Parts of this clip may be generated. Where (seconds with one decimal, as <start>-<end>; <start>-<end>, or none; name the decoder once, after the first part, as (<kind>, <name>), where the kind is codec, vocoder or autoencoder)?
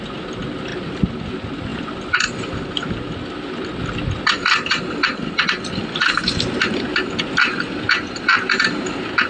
none